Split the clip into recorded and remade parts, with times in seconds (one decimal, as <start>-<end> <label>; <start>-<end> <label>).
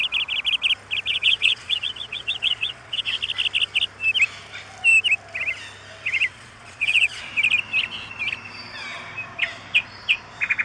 0.0-1.1 recorded; 1.1-3.2 remade; 3.2-6.3 recorded; 6.3-7.3 remade; 7.3-10.6 recorded